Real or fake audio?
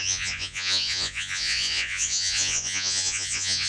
fake